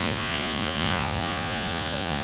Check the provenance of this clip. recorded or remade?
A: remade